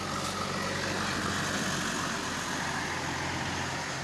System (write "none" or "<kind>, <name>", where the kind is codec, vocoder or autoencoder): none